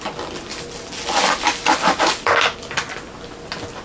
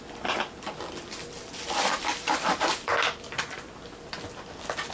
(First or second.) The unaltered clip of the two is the first